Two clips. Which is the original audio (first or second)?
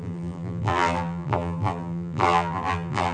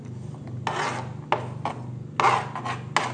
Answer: second